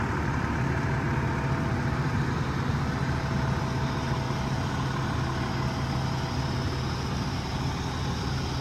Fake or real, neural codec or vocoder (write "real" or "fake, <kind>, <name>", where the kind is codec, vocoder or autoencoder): real